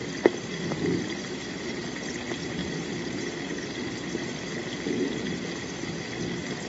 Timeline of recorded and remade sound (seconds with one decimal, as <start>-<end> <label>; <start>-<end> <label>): 0.0-2.6 recorded; 2.6-3.4 remade; 3.4-6.7 recorded

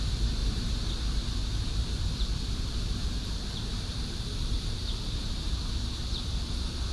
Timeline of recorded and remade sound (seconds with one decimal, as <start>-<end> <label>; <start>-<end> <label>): 0.0-0.4 recorded; 0.4-0.9 remade; 0.9-1.4 recorded; 1.4-5.5 remade; 5.5-6.9 recorded

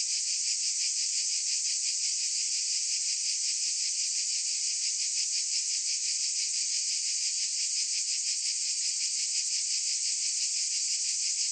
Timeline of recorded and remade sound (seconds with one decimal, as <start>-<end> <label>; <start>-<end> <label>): 0.0-11.5 recorded

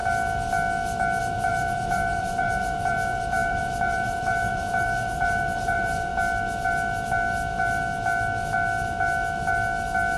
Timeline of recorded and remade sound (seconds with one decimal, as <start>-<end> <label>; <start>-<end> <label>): 0.0-1.2 recorded; 1.2-6.1 remade; 6.1-10.2 recorded

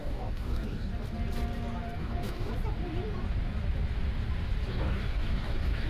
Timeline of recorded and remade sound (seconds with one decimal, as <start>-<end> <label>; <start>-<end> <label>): 0.0-0.9 remade; 0.9-2.0 recorded; 2.0-2.5 remade; 2.5-4.7 recorded; 4.7-5.9 remade

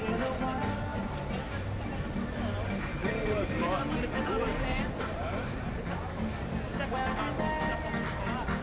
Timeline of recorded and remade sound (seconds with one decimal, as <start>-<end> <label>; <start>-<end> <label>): 0.0-0.9 recorded; 0.9-2.0 remade; 2.0-3.0 recorded; 3.0-5.7 remade; 5.7-8.6 recorded

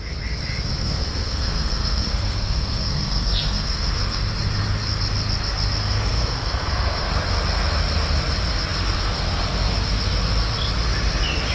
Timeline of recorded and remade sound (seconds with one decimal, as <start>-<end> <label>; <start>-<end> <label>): 0.0-0.8 recorded; 0.8-4.3 remade; 4.3-5.8 recorded; 5.8-7.1 remade; 7.1-11.5 recorded

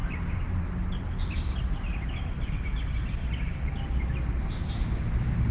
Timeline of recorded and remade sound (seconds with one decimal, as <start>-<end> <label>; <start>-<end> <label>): 0.0-5.5 recorded